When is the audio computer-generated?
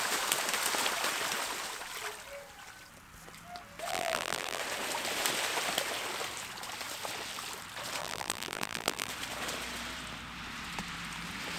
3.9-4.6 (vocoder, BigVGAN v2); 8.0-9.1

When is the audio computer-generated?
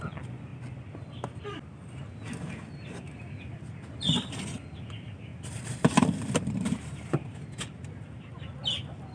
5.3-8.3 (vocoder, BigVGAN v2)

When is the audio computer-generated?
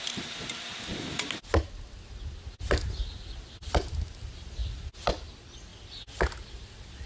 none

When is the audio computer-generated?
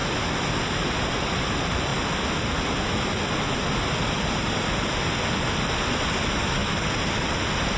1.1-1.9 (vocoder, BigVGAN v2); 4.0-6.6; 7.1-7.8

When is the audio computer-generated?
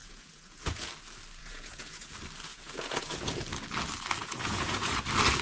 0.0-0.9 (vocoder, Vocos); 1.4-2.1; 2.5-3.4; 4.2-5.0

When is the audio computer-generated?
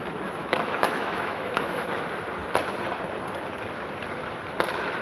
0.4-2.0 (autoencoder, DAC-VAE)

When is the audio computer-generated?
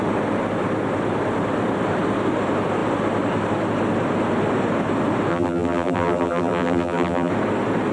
5.3-7.3 (vocoder, BigVGAN v2)